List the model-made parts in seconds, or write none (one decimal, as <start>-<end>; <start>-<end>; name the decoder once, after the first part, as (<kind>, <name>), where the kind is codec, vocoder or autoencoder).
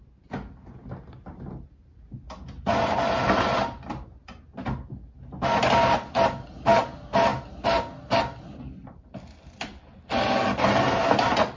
none